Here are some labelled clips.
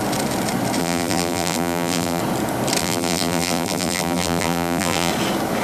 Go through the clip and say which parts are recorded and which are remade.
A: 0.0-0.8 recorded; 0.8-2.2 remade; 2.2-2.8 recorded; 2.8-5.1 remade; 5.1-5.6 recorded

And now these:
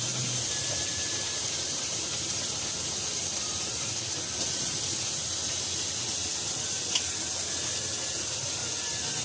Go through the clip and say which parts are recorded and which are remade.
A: 0.0-3.3 remade; 3.3-5.8 recorded; 5.8-6.3 remade; 6.3-8.2 recorded; 8.2-8.6 remade; 8.6-9.2 recorded

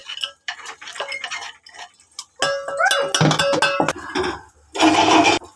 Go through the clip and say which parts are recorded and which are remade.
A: 0.0-5.6 recorded

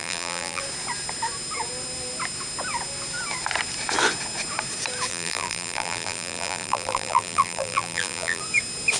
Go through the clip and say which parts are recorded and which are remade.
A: 0.0-0.6 remade; 0.6-5.1 recorded; 5.1-8.4 remade; 8.4-9.0 recorded